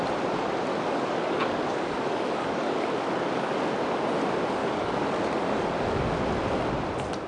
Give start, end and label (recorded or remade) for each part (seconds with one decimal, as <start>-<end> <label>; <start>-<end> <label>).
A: 0.0-0.7 recorded; 0.7-3.5 remade; 3.5-4.6 recorded; 4.6-6.2 remade; 6.2-7.3 recorded